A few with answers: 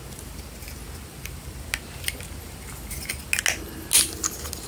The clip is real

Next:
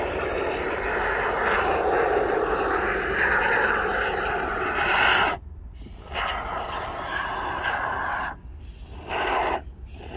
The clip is real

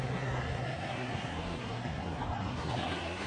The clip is fake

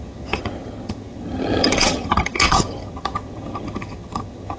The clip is fake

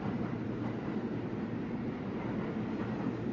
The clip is real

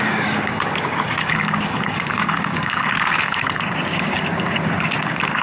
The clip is fake